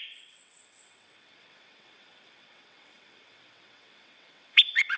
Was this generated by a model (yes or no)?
yes